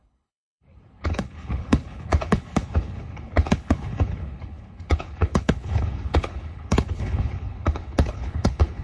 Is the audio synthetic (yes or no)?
yes